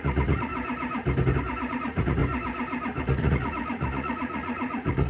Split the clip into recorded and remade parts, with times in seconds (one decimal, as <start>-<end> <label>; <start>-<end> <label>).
0.0-0.5 remade; 0.5-1.7 recorded; 1.7-2.2 remade; 2.2-3.0 recorded; 3.0-5.1 remade